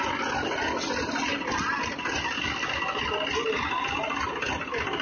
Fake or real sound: real